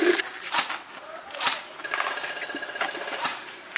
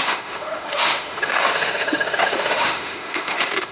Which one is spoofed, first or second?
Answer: second